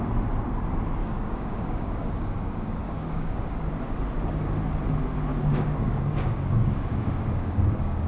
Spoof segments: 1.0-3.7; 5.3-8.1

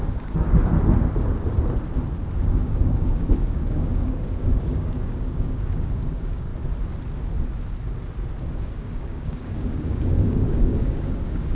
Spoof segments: 0.0-0.7; 2.4-6.5; 8.5-11.5